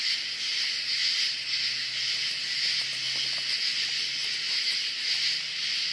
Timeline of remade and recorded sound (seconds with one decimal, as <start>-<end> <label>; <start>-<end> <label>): 0.0-1.0 recorded; 1.0-1.6 remade; 1.6-4.2 recorded; 4.2-5.5 remade; 5.5-5.9 recorded